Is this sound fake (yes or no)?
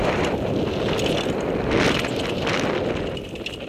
no